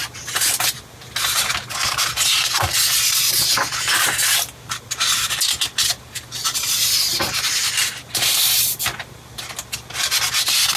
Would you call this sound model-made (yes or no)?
no